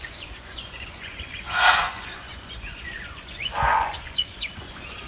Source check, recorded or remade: remade